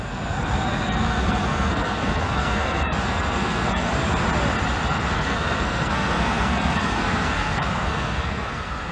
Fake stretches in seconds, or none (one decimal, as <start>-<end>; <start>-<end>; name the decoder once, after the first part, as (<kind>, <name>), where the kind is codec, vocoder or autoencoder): 0.0-3.9 (codec, SNAC); 4.9-8.9

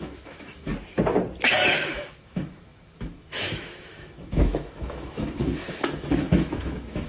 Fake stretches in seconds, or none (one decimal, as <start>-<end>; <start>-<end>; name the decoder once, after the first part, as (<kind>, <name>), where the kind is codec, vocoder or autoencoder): 0.0-0.7 (autoencoder, DAC-VAE); 1.7-7.1